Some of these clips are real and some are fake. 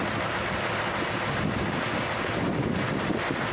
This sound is real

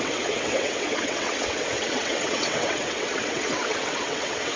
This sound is fake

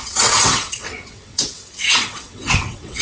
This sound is fake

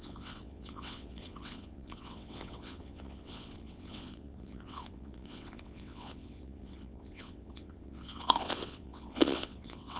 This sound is fake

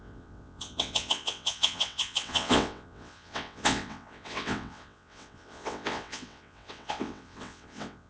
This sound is fake